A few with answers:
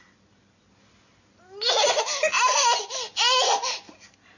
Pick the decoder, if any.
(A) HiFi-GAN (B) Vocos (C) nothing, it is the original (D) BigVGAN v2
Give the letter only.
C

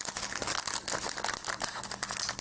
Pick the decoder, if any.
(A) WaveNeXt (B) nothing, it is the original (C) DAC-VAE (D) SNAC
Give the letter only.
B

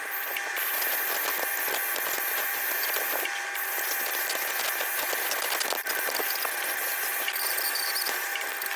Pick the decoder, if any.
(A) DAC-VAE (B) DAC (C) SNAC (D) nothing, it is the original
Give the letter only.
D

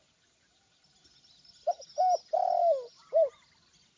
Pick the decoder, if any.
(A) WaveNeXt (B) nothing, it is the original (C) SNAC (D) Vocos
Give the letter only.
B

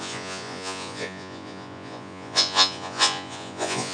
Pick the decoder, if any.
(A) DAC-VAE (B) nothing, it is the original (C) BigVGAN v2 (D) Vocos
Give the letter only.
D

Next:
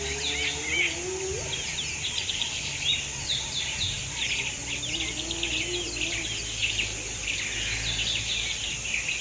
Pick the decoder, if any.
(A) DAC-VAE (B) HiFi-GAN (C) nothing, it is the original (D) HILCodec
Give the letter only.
C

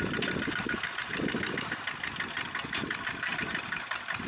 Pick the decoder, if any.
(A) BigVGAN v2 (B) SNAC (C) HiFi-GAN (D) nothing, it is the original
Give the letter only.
A